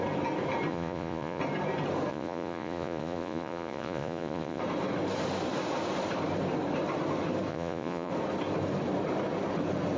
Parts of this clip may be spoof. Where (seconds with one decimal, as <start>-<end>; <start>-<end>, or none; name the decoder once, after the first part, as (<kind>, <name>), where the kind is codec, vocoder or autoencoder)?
0.7-1.4 (vocoder, Vocos); 2.1-4.6; 7.5-8.1

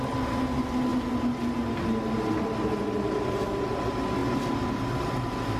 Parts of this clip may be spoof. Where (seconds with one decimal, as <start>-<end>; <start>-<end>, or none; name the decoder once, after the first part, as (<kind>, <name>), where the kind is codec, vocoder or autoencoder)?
none